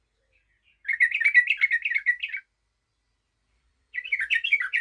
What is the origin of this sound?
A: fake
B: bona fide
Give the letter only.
A